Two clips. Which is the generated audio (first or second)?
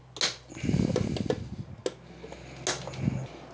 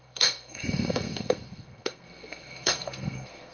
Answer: second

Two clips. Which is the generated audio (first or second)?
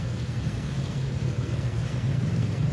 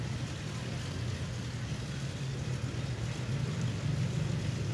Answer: first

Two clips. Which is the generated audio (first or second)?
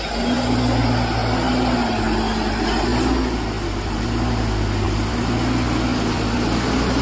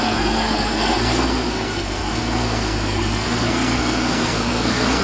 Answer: second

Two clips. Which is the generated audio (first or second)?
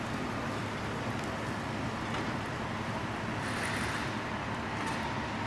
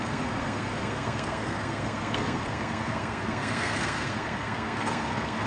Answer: second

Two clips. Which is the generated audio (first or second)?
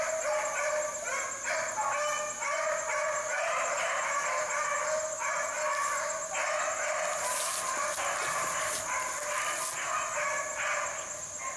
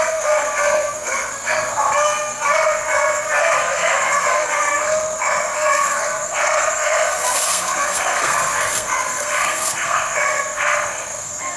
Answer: second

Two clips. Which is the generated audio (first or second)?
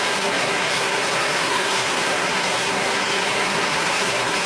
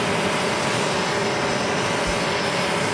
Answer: first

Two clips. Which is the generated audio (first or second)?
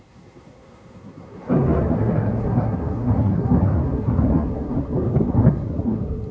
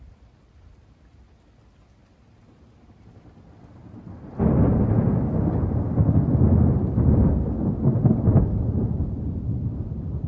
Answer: first